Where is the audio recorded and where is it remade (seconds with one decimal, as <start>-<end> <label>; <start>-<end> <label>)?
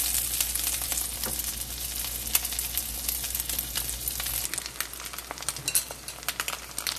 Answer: 0.0-7.0 recorded